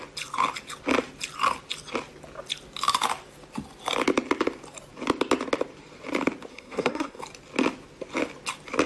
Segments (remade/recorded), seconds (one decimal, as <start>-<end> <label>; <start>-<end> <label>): 0.0-6.5 recorded; 6.5-7.2 remade; 7.2-8.9 recorded